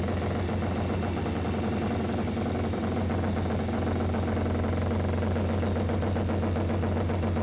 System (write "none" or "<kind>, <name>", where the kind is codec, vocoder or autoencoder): none